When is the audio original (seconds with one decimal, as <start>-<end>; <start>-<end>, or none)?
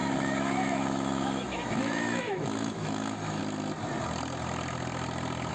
3.4-5.5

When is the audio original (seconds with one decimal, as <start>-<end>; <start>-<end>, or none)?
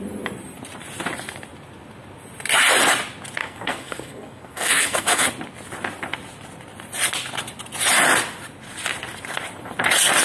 0.0-3.4; 5.3-10.2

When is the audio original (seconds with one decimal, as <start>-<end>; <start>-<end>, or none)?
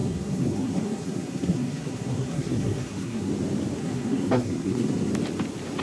3.3-3.8; 5.1-5.8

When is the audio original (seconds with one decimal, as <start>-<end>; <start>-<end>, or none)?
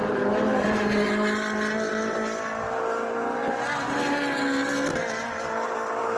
1.1-6.2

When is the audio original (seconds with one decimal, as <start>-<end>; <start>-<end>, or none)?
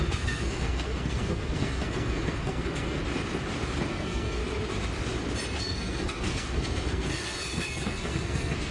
3.0-3.9; 4.4-5.6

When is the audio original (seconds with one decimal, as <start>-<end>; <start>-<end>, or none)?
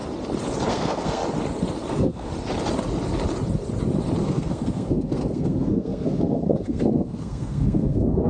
0.0-0.7; 1.2-1.9; 2.3-4.2